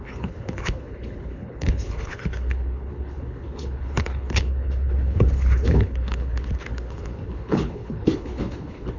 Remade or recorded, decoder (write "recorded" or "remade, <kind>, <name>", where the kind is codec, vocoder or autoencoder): remade, codec, HILCodec